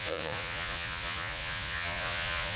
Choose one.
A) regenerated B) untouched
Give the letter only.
A